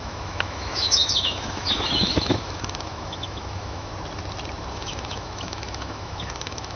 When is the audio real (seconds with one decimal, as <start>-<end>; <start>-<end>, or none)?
3.9-4.7